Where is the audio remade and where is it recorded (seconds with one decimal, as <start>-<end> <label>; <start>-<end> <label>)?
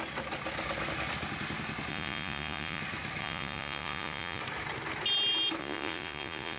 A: 0.0-1.9 recorded; 1.9-2.8 remade; 2.8-3.2 recorded; 3.2-4.4 remade; 4.4-5.6 recorded; 5.6-6.6 remade